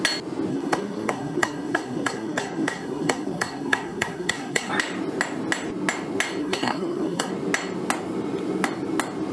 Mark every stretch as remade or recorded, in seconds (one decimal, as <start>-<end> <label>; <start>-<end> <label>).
0.0-0.5 recorded; 0.5-4.7 remade; 4.7-6.4 recorded; 6.4-7.3 remade; 7.3-9.3 recorded

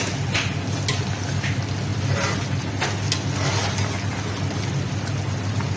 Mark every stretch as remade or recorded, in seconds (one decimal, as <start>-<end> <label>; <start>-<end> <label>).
0.0-5.8 recorded

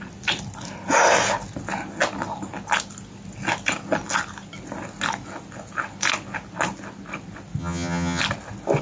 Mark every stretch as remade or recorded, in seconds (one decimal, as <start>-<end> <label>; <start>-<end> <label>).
0.0-7.6 recorded; 7.6-8.2 remade; 8.2-8.8 recorded

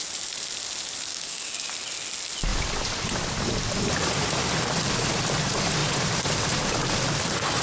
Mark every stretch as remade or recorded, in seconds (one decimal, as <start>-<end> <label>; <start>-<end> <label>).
0.0-1.1 recorded; 1.1-1.7 remade; 1.7-7.6 recorded

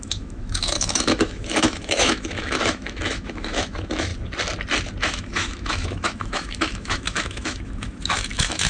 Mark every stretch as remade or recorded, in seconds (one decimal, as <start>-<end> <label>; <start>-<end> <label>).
0.0-4.1 remade; 4.1-5.0 recorded; 5.0-8.7 remade